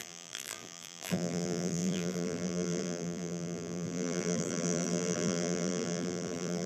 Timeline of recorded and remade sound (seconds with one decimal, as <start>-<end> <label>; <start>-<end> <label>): 0.0-6.7 remade